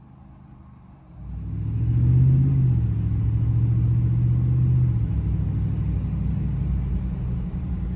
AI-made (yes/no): no